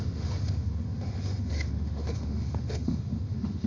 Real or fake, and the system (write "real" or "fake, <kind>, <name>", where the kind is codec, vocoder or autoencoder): fake, autoencoder, DAC-VAE